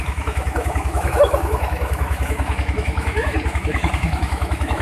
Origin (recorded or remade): remade